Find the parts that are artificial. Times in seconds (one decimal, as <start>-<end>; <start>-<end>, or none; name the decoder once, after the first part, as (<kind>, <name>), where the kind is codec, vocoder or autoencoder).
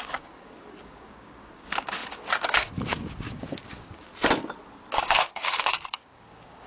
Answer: 0.0-4.1 (codec, DAC); 5.0-6.7